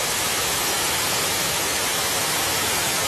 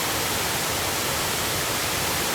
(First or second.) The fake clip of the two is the first